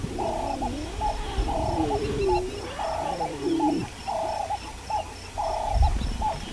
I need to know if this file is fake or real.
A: real